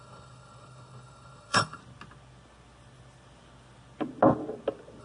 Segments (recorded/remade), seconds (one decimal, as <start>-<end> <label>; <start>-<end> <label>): 0.0-1.8 remade; 1.8-5.0 recorded